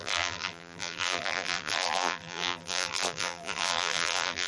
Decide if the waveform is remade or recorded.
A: remade